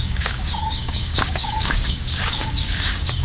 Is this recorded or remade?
remade